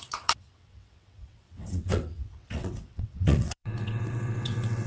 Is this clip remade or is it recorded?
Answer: remade